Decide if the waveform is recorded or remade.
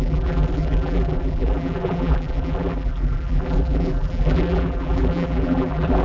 remade